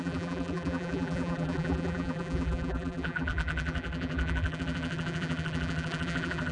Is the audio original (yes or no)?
no